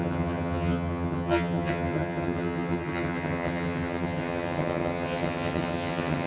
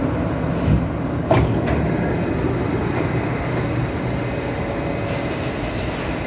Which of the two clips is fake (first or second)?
first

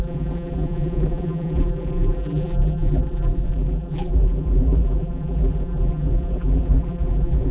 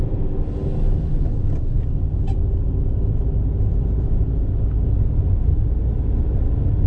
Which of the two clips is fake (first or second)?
first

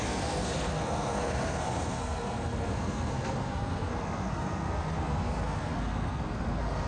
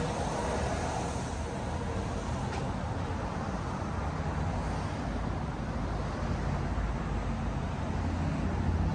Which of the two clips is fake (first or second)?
first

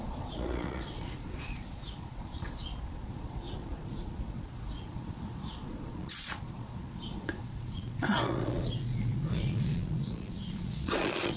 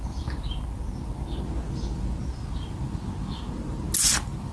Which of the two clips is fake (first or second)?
first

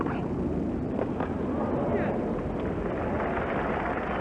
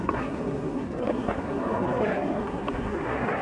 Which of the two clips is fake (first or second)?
second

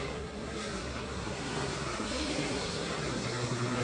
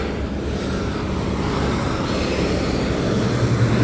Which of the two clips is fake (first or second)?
first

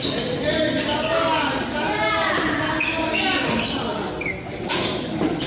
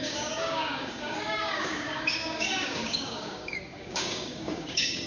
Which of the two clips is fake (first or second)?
second